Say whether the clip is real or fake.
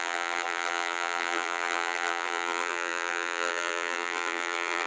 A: fake